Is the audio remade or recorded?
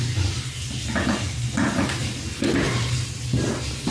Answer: recorded